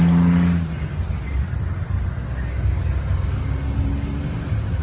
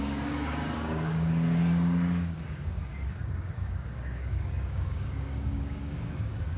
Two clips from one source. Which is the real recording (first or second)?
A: first